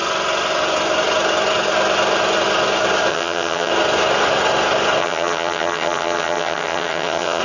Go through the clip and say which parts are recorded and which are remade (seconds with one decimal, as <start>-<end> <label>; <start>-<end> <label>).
0.0-3.1 recorded; 3.1-3.7 remade; 3.7-5.0 recorded; 5.0-7.4 remade

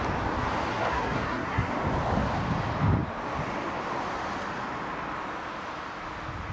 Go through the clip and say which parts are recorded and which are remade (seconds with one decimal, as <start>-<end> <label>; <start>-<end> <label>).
0.0-0.7 recorded; 0.7-1.7 remade; 1.7-6.5 recorded